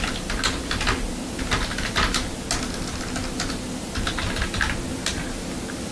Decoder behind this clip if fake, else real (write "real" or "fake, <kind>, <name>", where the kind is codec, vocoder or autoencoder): real